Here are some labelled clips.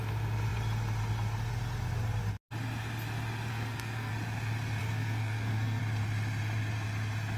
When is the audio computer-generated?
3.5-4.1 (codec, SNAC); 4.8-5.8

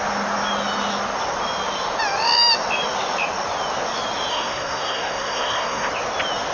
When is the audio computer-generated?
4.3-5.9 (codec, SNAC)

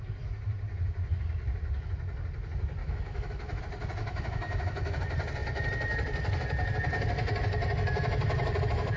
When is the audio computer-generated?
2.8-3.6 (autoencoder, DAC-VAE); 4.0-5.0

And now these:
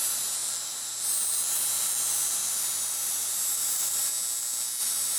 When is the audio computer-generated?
0.0-4.1 (vocoder, BigVGAN v2); 4.8-5.2

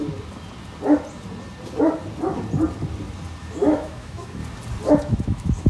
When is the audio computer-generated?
3.4-4.4 (autoencoder, DAC-VAE); 4.9-5.7

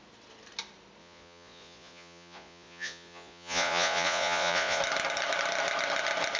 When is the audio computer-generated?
1.0-4.8 (vocoder, Vocos)